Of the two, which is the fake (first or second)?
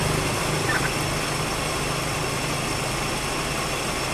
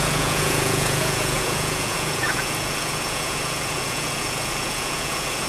second